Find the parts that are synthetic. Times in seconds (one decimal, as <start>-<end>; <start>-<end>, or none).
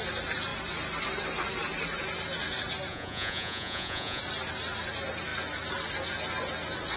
2.9-4.2